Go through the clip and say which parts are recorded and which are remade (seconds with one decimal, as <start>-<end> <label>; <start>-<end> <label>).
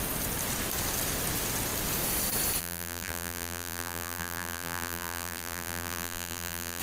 0.0-2.6 recorded; 2.6-6.8 remade